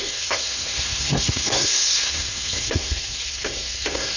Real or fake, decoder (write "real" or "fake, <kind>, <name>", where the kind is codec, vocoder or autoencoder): fake, codec, SNAC